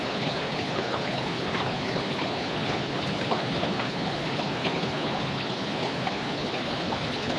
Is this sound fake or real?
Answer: fake